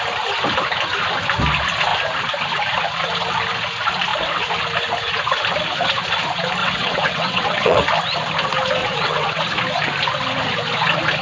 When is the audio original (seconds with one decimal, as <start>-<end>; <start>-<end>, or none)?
0.0-6.6; 7.8-8.8; 9.4-11.2